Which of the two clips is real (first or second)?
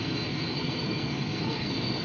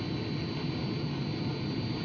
second